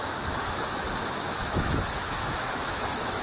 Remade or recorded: remade